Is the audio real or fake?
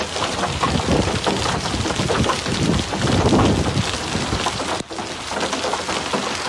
real